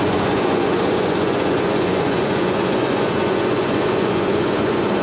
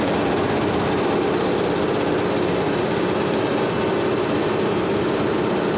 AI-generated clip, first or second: first